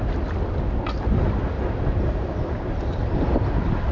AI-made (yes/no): no